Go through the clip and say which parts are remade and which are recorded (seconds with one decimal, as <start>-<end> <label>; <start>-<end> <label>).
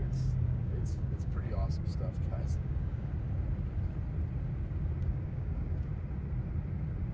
0.0-1.9 remade; 1.9-2.5 recorded; 2.5-3.1 remade; 3.1-5.0 recorded; 5.0-5.9 remade; 5.9-7.1 recorded